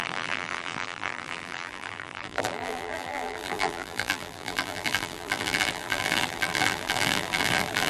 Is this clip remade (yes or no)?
yes